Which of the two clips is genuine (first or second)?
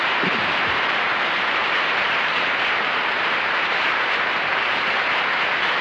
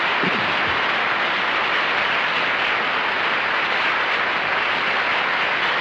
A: second